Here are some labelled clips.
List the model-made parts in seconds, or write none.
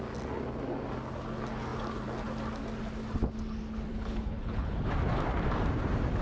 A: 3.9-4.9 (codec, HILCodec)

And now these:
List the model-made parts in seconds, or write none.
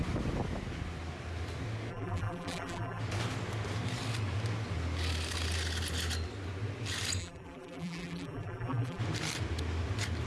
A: 1.9-3.0 (vocoder, BigVGAN v2); 7.2-9.0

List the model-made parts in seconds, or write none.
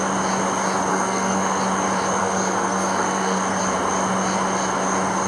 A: 0.9-1.6 (codec, SNAC); 2.2-3.6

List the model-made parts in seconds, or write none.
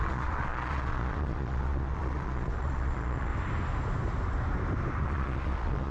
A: 0.0-3.3 (vocoder, Vocos); 5.0-5.9